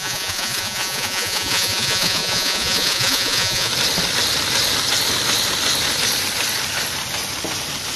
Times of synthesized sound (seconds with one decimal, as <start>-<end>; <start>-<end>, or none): 0.0-3.7